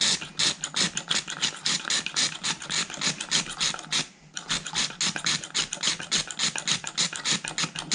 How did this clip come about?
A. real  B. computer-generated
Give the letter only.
A